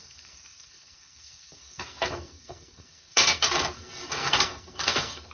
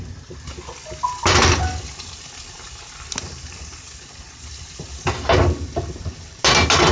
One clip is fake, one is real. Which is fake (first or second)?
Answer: first